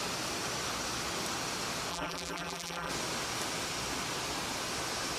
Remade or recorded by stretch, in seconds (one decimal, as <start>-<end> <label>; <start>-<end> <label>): 0.0-1.9 recorded; 1.9-2.9 remade; 2.9-5.2 recorded